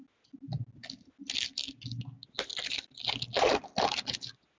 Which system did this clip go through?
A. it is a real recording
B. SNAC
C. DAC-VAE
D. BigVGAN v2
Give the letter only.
A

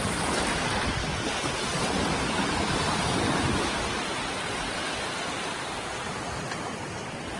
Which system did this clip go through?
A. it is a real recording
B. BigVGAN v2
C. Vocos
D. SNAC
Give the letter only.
A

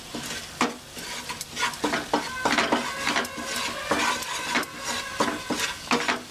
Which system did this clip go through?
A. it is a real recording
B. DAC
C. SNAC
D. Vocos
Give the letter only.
A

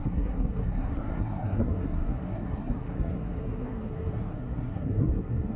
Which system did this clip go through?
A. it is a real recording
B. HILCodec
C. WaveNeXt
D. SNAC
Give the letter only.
D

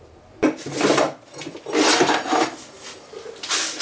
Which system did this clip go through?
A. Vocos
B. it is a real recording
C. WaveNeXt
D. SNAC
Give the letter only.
B